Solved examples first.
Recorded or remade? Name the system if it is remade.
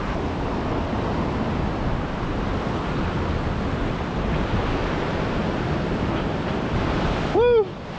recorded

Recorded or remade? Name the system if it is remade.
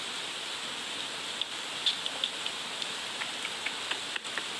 recorded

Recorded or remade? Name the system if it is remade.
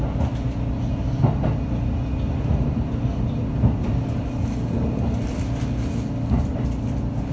recorded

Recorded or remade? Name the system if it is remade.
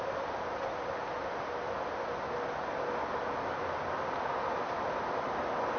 recorded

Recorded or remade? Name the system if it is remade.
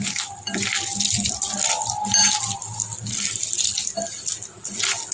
recorded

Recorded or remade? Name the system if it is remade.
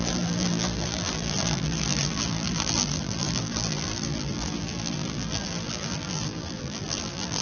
remade, vocoder, BigVGAN v2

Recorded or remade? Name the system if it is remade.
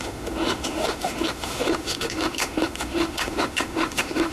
remade, autoencoder, DAC-VAE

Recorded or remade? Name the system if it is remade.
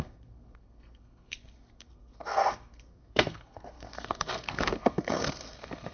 remade, codec, SNAC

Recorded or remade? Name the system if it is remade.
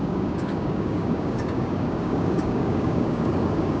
remade, codec, DAC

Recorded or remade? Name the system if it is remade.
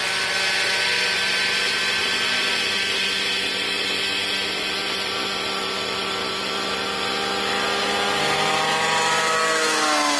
recorded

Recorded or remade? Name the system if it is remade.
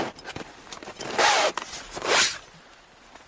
recorded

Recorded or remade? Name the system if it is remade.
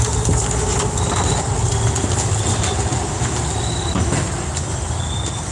recorded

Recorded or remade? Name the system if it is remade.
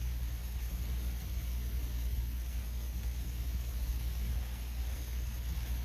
remade, codec, SNAC